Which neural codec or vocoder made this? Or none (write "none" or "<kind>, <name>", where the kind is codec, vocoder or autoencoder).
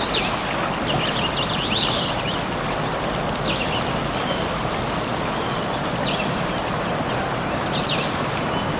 none